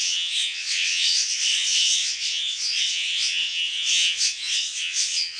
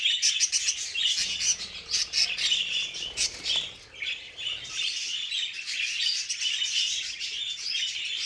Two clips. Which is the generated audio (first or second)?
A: first